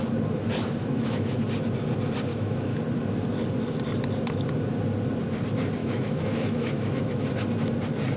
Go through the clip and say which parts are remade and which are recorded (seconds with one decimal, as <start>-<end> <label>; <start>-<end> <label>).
0.0-0.8 recorded; 0.8-1.4 remade; 1.4-2.3 recorded; 2.3-2.8 remade; 2.8-5.8 recorded; 5.8-7.3 remade; 7.3-8.2 recorded